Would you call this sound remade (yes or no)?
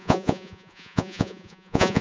yes